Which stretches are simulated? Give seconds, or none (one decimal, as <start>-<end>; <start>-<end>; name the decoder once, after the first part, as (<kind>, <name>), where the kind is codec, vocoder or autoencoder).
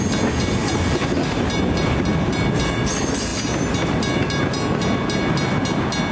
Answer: 0.6-1.5 (vocoder, BigVGAN v2)